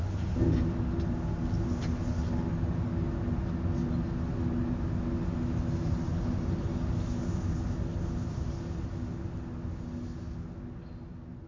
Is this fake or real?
real